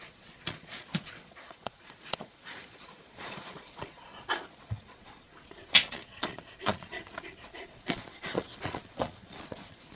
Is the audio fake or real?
fake